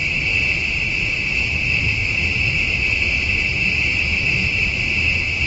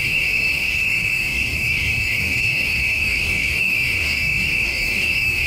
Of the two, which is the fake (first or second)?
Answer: second